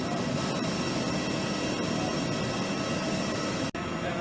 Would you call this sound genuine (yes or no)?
yes